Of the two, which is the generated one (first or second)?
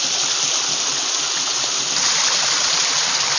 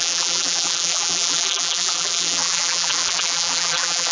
second